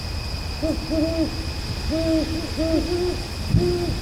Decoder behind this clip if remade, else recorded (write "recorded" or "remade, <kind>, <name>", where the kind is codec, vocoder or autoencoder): recorded